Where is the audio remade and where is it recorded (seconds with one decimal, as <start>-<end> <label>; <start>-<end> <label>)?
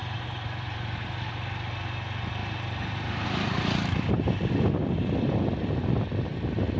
0.0-1.1 remade; 1.1-2.4 recorded; 2.4-4.1 remade; 4.1-6.8 recorded